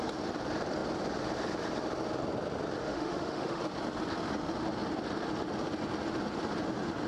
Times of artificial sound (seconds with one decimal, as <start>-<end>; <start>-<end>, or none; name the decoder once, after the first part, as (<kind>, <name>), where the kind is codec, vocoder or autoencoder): 2.8-3.6 (autoencoder, DAC-VAE)